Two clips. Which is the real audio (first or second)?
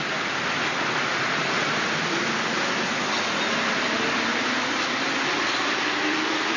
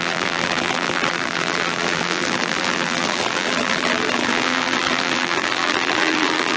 first